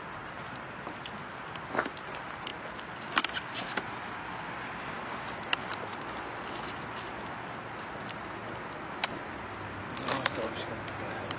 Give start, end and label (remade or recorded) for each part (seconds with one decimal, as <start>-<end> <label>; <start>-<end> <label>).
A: 0.0-11.4 recorded